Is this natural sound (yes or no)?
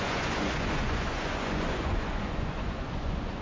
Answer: no